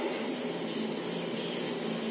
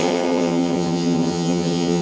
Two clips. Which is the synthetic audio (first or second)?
second